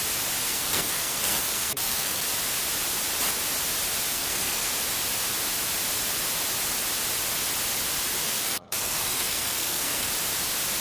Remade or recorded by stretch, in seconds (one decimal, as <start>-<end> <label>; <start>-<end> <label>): 0.0-0.4 recorded; 0.4-2.2 remade; 2.2-4.1 recorded; 4.1-4.7 remade; 4.7-8.2 recorded; 8.2-10.1 remade; 10.1-10.8 recorded

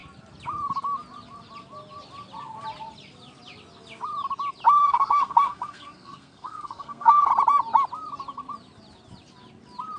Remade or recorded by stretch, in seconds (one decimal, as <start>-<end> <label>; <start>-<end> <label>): 0.0-4.8 recorded; 4.8-7.3 remade; 7.3-10.0 recorded

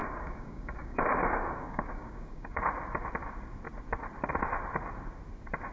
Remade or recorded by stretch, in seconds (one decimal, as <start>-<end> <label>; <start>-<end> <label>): 0.0-2.6 remade; 2.6-5.7 recorded

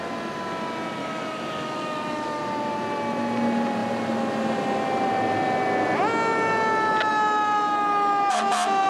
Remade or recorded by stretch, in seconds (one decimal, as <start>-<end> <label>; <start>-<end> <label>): 0.0-1.0 recorded; 1.0-2.4 remade; 2.4-8.9 recorded

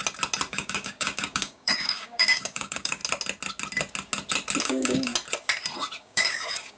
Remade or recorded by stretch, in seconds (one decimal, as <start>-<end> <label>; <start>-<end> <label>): 0.0-0.5 recorded; 0.5-3.0 remade; 3.0-4.6 recorded; 4.6-5.1 remade; 5.1-6.0 recorded; 6.0-6.8 remade

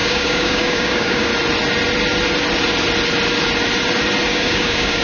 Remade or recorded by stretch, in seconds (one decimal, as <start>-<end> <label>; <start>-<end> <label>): 0.0-1.3 remade; 1.3-4.3 recorded; 4.3-5.0 remade

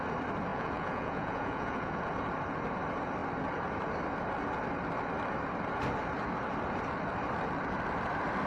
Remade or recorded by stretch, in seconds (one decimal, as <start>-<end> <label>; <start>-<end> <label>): 0.0-0.5 recorded; 0.5-2.0 remade; 2.0-8.5 recorded

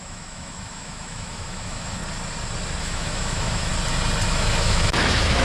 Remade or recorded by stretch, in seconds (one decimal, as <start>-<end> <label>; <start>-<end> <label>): 0.0-2.0 remade; 2.0-2.8 recorded; 2.8-3.7 remade; 3.7-4.3 recorded; 4.3-5.4 remade